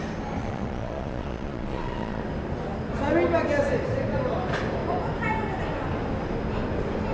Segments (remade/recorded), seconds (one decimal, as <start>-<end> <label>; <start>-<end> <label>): 0.0-0.4 recorded; 0.4-2.2 remade; 2.2-7.1 recorded